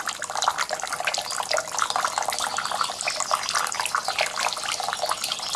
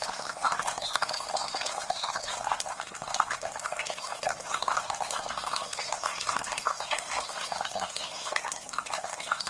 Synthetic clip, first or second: second